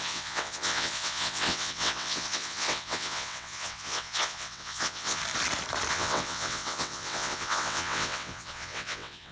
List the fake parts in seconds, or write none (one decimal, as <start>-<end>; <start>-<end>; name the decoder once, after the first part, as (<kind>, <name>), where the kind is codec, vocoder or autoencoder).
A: 0.0-5.2 (vocoder, WaveNeXt); 5.9-9.3